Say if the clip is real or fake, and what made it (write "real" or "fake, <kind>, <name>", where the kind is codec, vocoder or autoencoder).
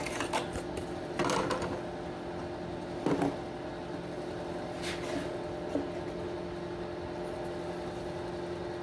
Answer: real